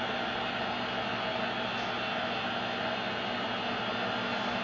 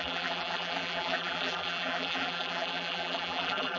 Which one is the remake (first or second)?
second